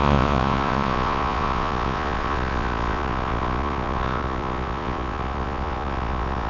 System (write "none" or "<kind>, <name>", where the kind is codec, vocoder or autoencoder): vocoder, Vocos